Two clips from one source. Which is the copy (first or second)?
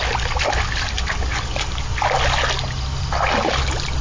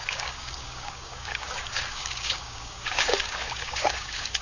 second